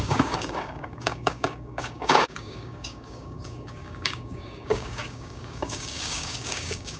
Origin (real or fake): fake